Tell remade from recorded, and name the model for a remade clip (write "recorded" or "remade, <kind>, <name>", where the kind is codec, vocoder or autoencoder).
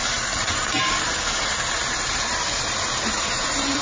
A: remade, vocoder, BigVGAN v2